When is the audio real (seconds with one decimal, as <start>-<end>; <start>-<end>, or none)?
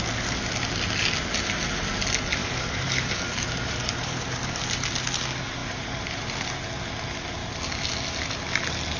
0.0-2.4; 4.7-5.6; 6.4-9.0